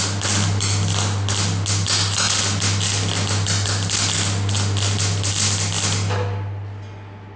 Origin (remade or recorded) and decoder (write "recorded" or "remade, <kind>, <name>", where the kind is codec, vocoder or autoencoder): recorded